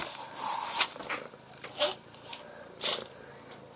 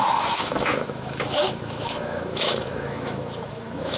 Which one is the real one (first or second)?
first